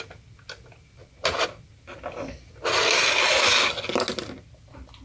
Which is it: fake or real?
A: real